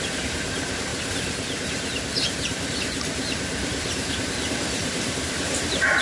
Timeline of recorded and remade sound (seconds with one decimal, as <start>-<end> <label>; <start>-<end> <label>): 0.0-6.0 remade